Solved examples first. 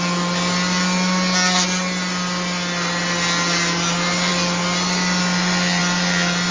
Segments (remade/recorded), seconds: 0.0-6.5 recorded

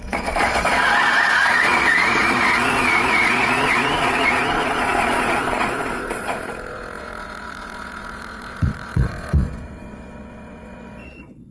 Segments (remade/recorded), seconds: 0.0-11.5 remade

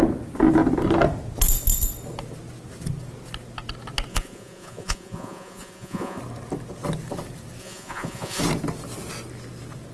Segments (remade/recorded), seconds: 0.0-4.1 recorded; 4.1-6.2 remade; 6.2-7.6 recorded; 7.6-8.4 remade; 8.4-9.9 recorded

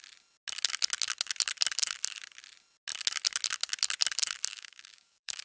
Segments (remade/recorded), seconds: 0.0-4.5 recorded; 4.5-5.4 remade

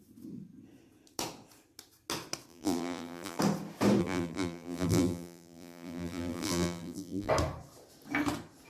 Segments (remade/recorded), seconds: 0.0-2.5 recorded; 2.5-3.4 remade; 3.4-4.0 recorded; 4.0-7.3 remade; 7.3-8.7 recorded